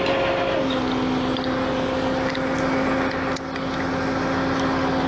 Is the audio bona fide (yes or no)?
yes